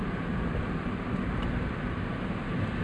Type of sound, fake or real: real